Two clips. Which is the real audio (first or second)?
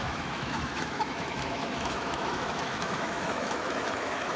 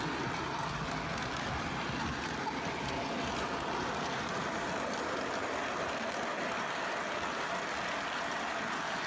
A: second